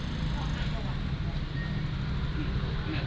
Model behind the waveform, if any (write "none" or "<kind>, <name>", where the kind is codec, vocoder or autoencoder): none